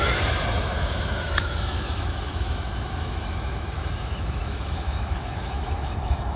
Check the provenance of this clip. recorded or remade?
remade